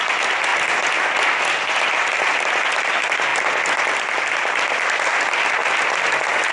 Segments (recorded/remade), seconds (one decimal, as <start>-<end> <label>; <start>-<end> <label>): 0.0-6.5 recorded

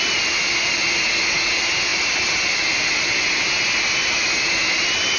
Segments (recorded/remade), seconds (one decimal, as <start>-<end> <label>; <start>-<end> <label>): 0.0-5.2 recorded